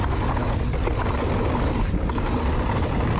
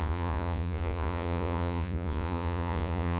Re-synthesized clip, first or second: second